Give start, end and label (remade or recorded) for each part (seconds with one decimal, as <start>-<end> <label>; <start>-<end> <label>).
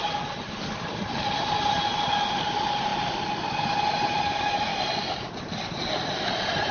0.0-1.6 remade; 1.6-2.3 recorded; 2.3-2.9 remade; 2.9-3.5 recorded; 3.5-4.7 remade; 4.7-5.5 recorded; 5.5-6.7 remade